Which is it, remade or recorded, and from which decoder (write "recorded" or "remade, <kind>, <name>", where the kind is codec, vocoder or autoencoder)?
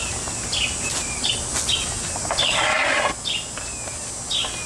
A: recorded